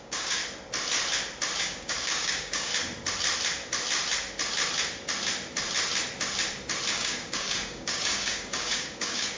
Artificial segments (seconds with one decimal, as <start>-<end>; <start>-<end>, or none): 0.0-0.4; 1.6-2.7; 6.9-9.4